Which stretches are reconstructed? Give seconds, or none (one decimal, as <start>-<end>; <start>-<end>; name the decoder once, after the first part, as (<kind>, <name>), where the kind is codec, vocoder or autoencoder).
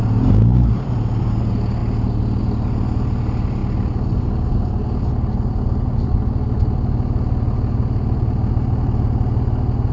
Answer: 0.5-1.4 (vocoder, BigVGAN v2); 1.8-2.4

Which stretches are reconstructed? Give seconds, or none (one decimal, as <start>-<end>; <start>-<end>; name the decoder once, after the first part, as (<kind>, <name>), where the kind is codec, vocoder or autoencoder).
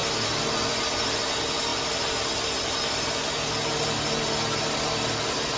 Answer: none